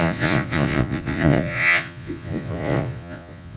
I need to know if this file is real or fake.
fake